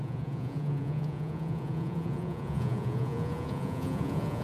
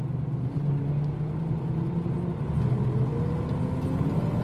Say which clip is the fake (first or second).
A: first